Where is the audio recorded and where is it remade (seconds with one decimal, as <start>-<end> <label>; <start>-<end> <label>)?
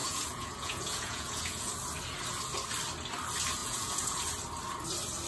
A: 0.0-1.7 remade; 1.7-3.6 recorded; 3.6-4.2 remade; 4.2-5.3 recorded